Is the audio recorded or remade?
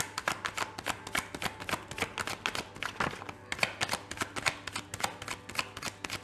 recorded